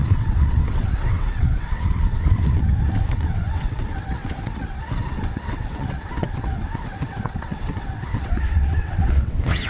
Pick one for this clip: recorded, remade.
remade